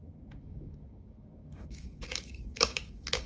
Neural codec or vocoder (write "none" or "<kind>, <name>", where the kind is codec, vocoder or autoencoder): codec, DAC